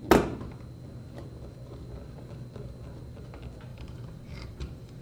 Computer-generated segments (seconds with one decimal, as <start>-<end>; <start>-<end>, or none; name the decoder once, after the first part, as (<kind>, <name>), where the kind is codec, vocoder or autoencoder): 3.7-5.0 (vocoder, BigVGAN v2)